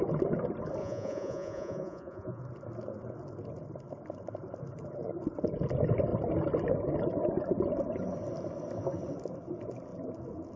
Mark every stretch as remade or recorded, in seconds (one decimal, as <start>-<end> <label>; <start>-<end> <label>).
0.0-0.8 recorded; 0.8-2.4 remade; 2.4-10.6 recorded